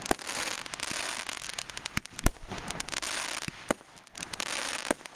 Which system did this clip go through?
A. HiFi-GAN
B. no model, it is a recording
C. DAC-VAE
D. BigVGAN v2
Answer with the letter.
D